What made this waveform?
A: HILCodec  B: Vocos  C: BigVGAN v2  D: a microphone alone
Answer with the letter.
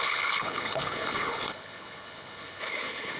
A